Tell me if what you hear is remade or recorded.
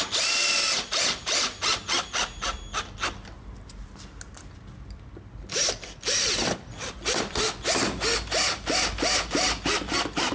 recorded